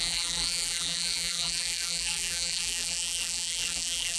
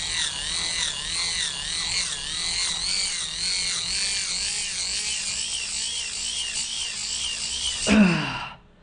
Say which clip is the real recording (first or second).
second